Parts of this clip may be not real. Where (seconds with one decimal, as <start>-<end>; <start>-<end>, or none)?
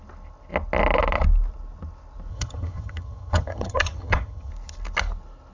2.3-4.5